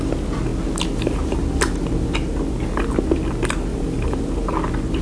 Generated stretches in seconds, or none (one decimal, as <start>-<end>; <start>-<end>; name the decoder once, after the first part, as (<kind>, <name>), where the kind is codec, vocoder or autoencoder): 3.7-4.5 (vocoder, BigVGAN v2)